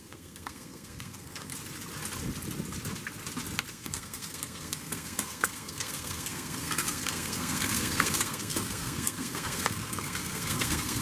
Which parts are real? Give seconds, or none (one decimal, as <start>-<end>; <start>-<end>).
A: 1.5-3.7